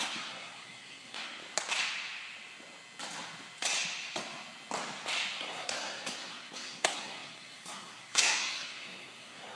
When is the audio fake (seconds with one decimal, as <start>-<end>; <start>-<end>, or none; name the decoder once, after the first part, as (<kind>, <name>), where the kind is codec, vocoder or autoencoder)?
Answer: 0.0-1.4 (codec, SNAC); 5.4-9.6